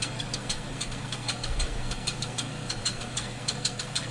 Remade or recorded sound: remade